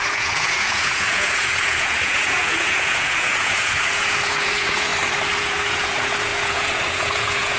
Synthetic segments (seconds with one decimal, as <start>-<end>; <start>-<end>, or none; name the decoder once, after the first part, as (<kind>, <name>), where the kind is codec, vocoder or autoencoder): 0.0-4.9 (vocoder, Vocos); 5.4-7.6